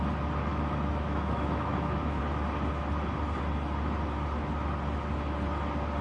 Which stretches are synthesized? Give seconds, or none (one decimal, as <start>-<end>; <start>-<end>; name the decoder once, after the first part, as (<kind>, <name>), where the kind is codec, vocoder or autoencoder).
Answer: 0.5-2.2 (autoencoder, DAC-VAE)